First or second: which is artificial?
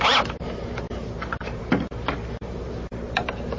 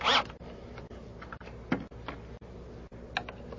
first